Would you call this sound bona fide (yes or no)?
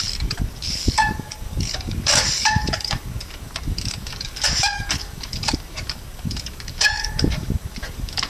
no